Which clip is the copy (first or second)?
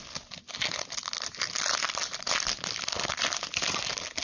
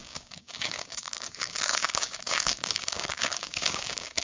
second